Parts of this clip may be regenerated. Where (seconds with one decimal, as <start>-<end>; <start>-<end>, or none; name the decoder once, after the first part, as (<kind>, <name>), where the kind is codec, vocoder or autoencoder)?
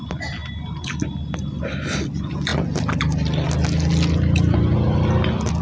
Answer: none